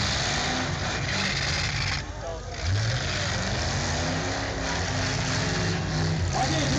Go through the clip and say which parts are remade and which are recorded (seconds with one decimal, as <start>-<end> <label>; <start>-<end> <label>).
0.0-6.8 recorded